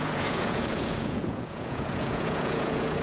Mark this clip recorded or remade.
remade